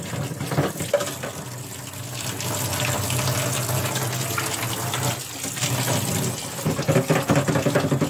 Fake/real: real